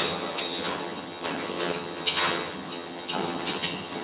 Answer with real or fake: fake